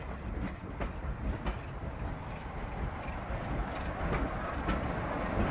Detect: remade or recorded recorded